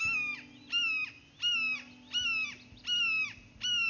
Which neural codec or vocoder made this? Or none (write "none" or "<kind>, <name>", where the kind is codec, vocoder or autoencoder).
none